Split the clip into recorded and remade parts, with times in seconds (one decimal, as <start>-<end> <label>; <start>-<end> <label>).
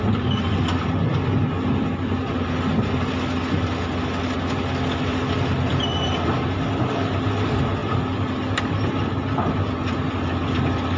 0.0-11.0 recorded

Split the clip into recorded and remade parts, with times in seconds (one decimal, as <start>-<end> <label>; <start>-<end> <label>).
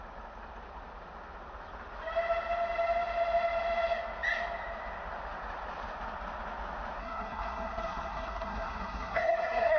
0.0-7.0 recorded; 7.0-9.8 remade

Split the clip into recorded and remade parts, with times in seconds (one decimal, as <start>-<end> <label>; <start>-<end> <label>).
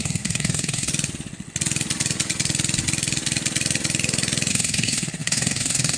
0.0-0.9 remade; 0.9-4.5 recorded; 4.5-6.0 remade